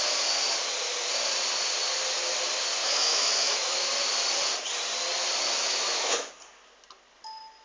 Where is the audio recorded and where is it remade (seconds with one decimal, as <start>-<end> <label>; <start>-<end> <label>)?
0.0-2.8 recorded; 2.8-3.8 remade; 3.8-5.6 recorded; 5.6-6.3 remade; 6.3-7.6 recorded

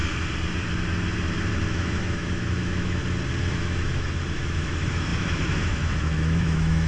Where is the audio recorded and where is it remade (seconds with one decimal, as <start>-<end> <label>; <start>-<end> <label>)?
0.0-1.7 recorded; 1.7-3.0 remade; 3.0-3.5 recorded; 3.5-6.9 remade

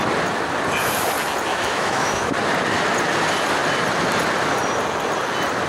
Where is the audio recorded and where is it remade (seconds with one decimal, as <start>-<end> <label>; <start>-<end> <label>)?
0.0-1.5 recorded; 1.5-2.3 remade; 2.3-5.7 recorded

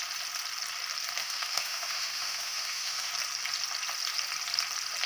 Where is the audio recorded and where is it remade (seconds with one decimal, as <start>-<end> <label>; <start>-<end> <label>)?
0.0-1.2 recorded; 1.2-3.1 remade; 3.1-5.1 recorded

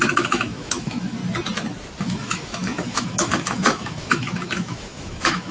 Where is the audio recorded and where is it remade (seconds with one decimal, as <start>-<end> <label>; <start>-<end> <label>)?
0.0-1.2 remade; 1.2-2.0 recorded; 2.0-5.5 remade

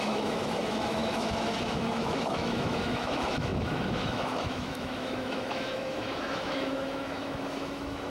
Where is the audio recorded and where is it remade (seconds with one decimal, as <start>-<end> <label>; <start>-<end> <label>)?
0.0-8.1 remade

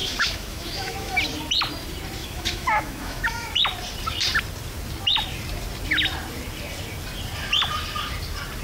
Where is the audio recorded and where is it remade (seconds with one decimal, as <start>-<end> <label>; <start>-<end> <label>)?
0.0-1.2 remade; 1.2-2.2 recorded; 2.2-3.5 remade; 3.5-8.6 recorded

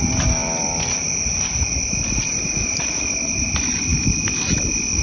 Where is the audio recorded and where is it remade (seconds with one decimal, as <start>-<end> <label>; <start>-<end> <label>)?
0.0-5.0 recorded